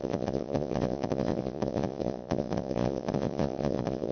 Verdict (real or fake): fake